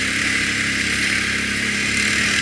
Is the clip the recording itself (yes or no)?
yes